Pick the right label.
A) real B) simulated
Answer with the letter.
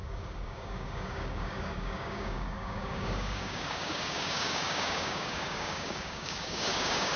B